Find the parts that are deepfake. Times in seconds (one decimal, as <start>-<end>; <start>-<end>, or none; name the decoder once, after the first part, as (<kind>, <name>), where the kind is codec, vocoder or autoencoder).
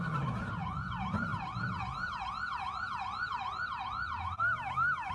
none